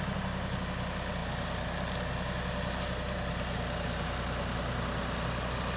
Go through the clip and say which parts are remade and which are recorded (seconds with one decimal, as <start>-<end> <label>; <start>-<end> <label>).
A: 0.0-5.8 recorded